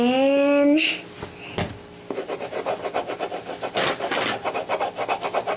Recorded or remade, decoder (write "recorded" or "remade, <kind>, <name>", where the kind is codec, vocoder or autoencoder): recorded